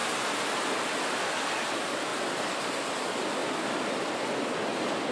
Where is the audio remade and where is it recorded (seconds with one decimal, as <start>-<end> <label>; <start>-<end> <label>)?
0.0-1.7 recorded; 1.7-2.1 remade; 2.1-3.0 recorded; 3.0-3.4 remade; 3.4-5.1 recorded